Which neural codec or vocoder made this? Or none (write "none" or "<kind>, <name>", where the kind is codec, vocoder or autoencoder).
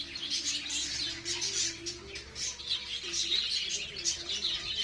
none